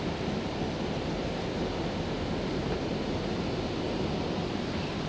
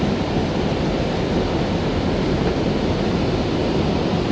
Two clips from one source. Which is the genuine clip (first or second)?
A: first